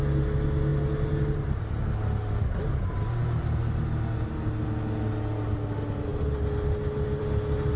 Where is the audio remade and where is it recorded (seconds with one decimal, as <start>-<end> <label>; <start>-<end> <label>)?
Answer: 0.0-7.8 recorded